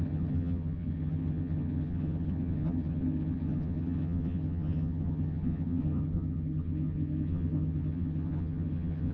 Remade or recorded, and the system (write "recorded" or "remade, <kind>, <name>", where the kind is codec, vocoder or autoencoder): remade, vocoder, HiFi-GAN